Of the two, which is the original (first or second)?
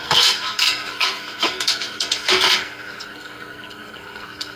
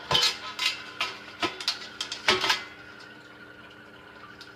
second